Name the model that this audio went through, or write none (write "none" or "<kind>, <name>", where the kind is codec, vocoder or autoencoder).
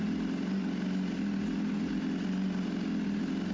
none